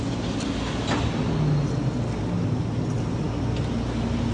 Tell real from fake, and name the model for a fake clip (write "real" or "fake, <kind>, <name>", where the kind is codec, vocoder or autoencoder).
real